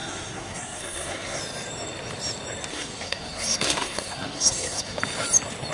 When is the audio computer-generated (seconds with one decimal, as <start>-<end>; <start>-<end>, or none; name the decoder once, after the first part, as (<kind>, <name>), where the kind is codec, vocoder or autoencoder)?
0.0-1.4 (codec, SNAC); 2.7-5.0